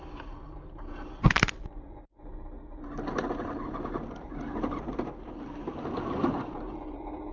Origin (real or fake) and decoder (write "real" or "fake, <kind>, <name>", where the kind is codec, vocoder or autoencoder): real